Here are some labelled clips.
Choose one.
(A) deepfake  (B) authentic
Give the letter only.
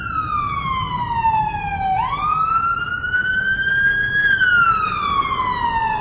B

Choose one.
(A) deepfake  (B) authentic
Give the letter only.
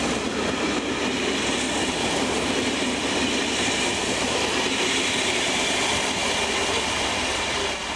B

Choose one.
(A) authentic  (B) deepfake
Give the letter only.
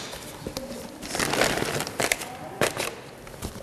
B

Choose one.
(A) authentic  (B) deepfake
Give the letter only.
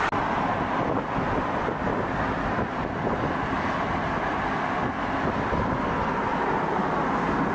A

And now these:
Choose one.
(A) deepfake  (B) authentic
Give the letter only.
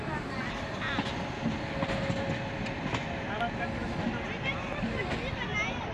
B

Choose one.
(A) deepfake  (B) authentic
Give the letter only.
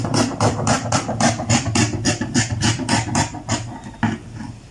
A